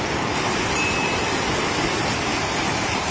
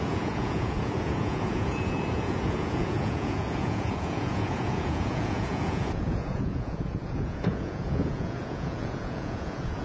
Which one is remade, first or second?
second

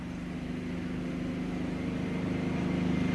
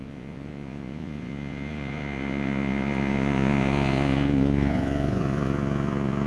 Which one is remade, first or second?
second